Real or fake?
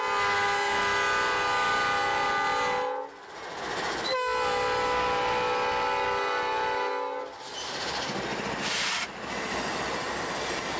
real